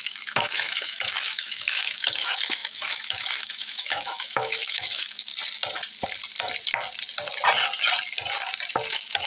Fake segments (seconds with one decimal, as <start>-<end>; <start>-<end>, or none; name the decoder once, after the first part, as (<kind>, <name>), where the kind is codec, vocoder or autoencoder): 0.0-5.3 (autoencoder, DAC-VAE); 8.9-9.3